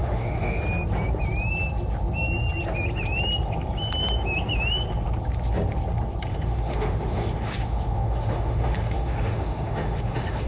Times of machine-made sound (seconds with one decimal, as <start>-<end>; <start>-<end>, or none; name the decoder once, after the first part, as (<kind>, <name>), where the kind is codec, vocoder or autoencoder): 0.0-0.6 (autoencoder, DAC-VAE); 6.3-10.5